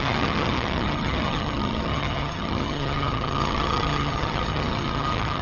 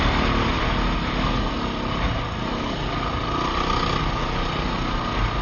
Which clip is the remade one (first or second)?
first